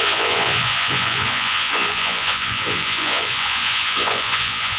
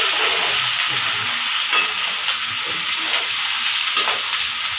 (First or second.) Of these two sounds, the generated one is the first